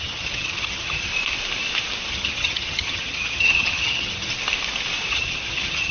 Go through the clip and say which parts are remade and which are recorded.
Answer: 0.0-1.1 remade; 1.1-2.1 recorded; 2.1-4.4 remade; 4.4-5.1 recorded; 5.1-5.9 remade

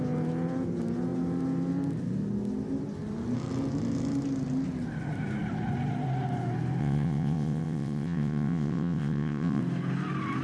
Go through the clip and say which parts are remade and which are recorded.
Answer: 0.0-6.8 recorded; 6.8-9.6 remade; 9.6-10.4 recorded

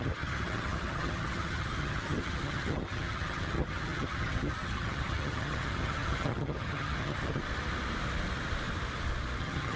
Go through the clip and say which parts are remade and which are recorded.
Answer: 0.0-7.4 remade; 7.4-9.4 recorded; 9.4-9.8 remade

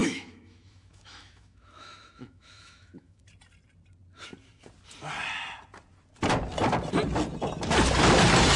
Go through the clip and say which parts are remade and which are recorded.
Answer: 0.0-3.2 remade; 3.2-8.6 recorded

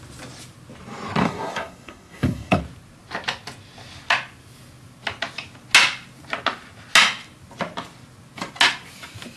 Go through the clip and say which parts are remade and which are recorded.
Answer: 0.0-1.2 recorded; 1.2-2.6 remade; 2.6-9.4 recorded

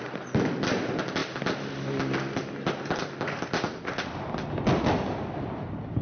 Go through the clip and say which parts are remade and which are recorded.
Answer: 0.0-6.0 recorded